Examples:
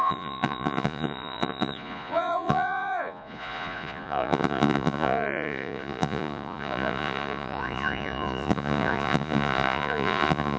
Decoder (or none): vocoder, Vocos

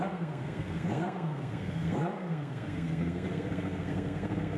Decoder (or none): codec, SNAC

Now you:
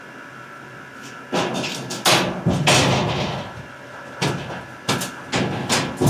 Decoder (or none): none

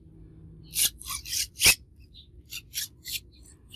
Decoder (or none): none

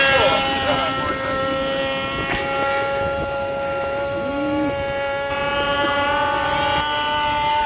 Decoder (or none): none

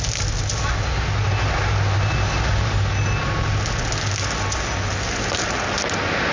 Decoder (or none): none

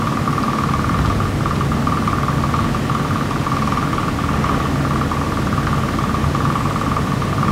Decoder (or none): none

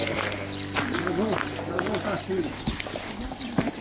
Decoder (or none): none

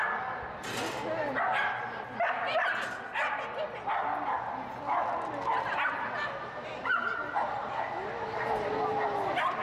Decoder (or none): none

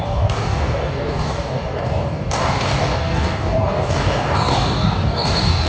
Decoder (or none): codec, DAC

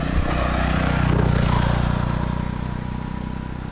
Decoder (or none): none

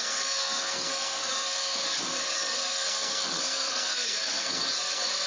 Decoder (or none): codec, SNAC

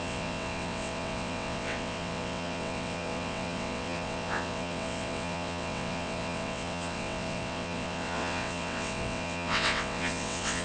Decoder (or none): vocoder, WaveNeXt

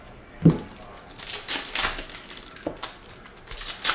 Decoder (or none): none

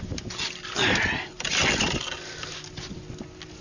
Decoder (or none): none